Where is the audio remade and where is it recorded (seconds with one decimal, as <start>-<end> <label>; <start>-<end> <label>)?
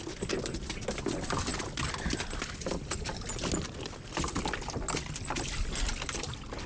0.0-6.7 recorded